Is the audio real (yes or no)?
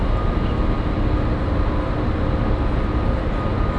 yes